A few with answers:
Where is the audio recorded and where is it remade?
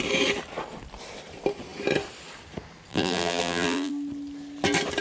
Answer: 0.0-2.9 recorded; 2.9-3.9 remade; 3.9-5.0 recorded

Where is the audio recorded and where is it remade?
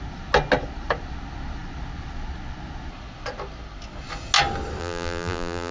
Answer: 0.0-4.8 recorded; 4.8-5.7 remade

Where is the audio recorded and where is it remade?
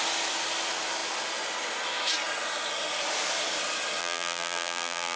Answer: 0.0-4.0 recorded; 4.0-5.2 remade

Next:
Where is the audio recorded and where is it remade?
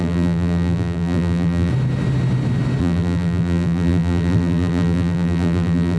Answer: 0.0-1.7 remade; 1.7-2.8 recorded; 2.8-6.0 remade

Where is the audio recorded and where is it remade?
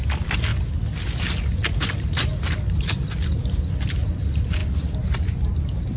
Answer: 0.0-0.5 remade; 0.5-1.5 recorded; 1.5-2.3 remade; 2.3-2.8 recorded; 2.8-4.6 remade; 4.6-6.0 recorded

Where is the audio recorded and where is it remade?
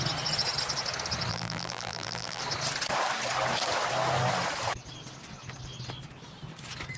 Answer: 0.0-1.3 recorded; 1.3-2.4 remade; 2.4-7.0 recorded